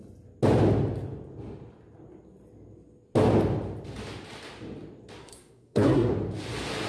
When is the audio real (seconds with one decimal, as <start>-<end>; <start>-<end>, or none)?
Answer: 0.0-5.2; 6.1-6.9